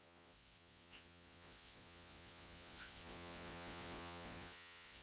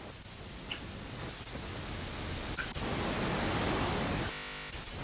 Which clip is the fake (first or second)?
first